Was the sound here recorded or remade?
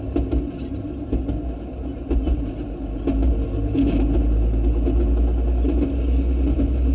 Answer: recorded